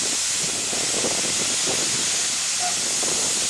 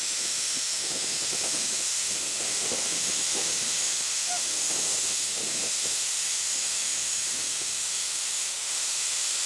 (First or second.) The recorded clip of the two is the first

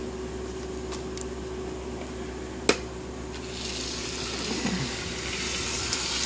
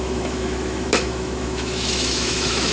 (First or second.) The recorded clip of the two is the first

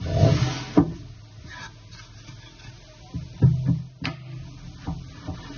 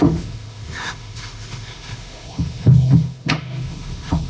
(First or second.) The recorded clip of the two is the first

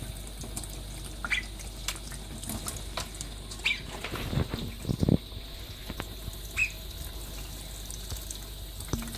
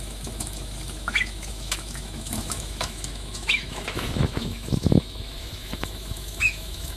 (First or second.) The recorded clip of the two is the first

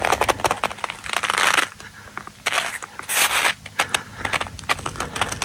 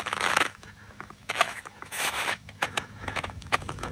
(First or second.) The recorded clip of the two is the first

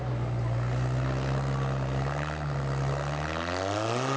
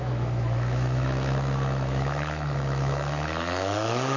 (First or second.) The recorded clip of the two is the first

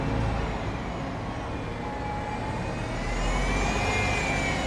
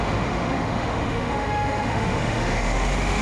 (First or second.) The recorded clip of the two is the first